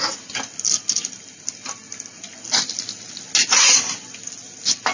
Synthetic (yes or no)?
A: no